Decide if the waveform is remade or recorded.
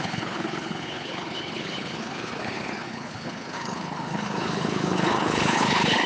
remade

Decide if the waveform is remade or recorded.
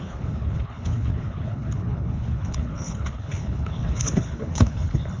remade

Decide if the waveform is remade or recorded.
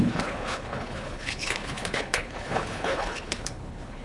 remade